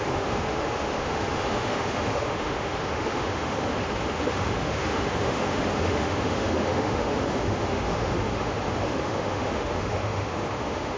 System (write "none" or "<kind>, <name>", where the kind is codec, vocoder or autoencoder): autoencoder, DAC-VAE